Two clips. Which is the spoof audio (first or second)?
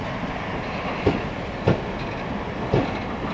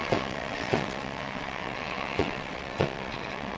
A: second